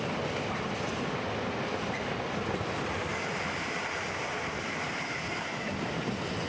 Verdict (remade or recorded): recorded